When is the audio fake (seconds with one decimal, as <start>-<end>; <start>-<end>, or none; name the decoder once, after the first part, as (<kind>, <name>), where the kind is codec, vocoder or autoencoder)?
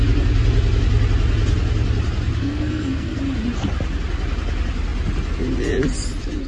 2.4-3.2 (codec, SNAC)